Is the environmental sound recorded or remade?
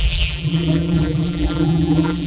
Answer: remade